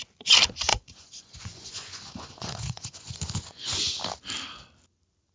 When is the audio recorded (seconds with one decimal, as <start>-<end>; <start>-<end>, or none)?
0.0-0.7; 3.9-5.3